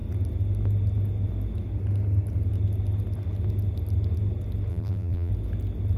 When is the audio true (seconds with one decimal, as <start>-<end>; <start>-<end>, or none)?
0.0-4.7; 5.3-6.0